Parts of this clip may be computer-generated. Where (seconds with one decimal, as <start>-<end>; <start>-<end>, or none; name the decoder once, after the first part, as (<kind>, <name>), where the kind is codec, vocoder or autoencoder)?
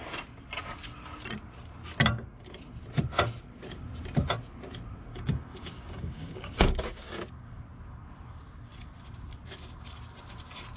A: 5.1-7.6 (codec, DAC)